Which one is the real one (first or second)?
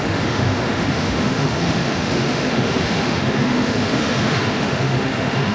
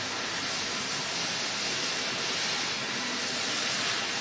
second